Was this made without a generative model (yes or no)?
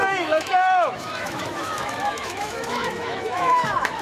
no